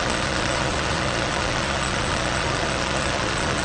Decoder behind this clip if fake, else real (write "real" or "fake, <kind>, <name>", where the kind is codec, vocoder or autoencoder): fake, vocoder, Vocos